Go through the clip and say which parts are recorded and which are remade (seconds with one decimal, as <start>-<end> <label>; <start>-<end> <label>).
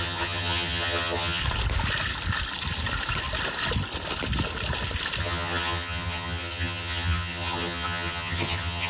0.0-1.4 remade; 1.4-5.2 recorded; 5.2-8.9 remade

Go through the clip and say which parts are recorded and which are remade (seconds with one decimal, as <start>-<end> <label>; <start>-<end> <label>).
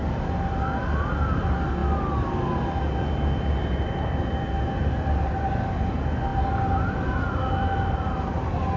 0.0-8.8 recorded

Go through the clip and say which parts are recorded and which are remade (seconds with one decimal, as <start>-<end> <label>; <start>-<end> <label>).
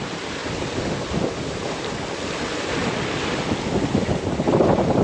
0.0-0.4 remade; 0.4-2.2 recorded; 2.2-2.8 remade; 2.8-4.6 recorded; 4.6-5.0 remade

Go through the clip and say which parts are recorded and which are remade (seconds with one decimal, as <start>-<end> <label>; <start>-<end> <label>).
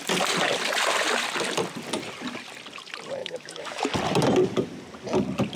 0.0-3.2 recorded; 3.2-3.8 remade; 3.8-5.6 recorded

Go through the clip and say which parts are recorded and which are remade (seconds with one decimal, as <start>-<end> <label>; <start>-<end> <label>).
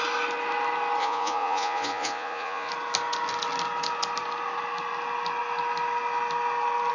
0.0-1.0 recorded; 1.0-2.7 remade; 2.7-6.9 recorded